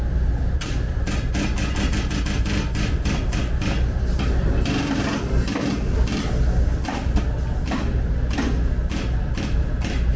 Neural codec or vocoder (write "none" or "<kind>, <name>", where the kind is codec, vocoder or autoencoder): none